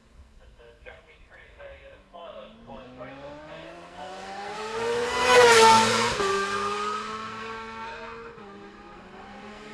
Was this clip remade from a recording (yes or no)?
yes